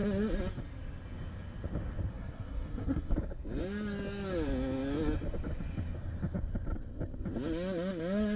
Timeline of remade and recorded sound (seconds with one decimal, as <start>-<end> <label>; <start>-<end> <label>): 0.0-2.1 recorded; 2.1-3.1 remade; 3.1-8.4 recorded